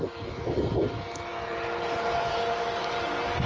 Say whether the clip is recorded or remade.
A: recorded